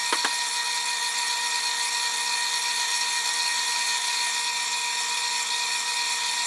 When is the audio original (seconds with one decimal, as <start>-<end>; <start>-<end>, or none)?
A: 0.0-6.5